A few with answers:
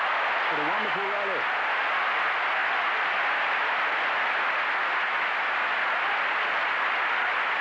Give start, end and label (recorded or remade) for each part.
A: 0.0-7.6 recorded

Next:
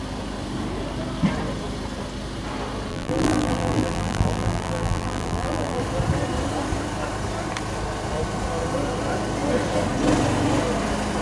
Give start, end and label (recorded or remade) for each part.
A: 0.0-2.9 recorded; 2.9-5.8 remade; 5.8-11.2 recorded

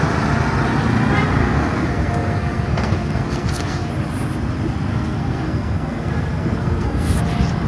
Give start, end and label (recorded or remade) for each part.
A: 0.0-1.4 recorded; 1.4-3.9 remade; 3.9-4.9 recorded; 4.9-7.2 remade; 7.2-7.7 recorded

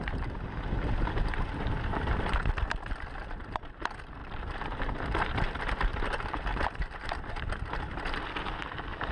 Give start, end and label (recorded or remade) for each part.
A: 0.0-4.2 recorded; 4.2-4.8 remade; 4.8-9.1 recorded